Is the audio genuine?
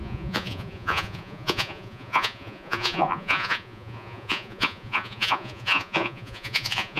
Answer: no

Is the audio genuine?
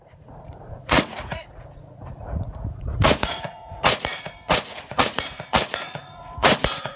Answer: no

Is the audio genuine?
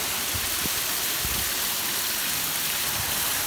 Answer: no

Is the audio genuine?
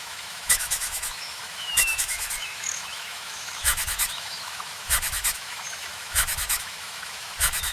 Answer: no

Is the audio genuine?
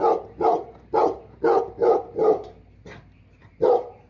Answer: yes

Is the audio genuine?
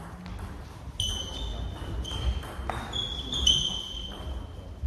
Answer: yes